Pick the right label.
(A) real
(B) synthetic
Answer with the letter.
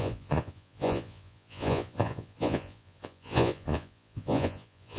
B